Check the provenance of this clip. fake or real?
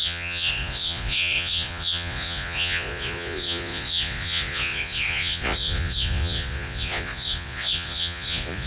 fake